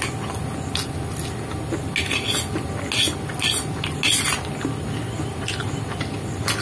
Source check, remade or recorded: recorded